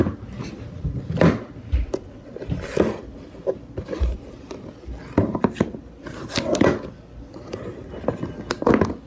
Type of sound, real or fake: real